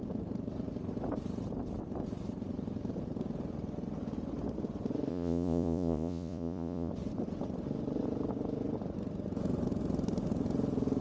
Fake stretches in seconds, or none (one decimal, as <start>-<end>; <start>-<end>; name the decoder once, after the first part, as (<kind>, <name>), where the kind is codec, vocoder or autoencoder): 5.1-6.9 (vocoder, Vocos)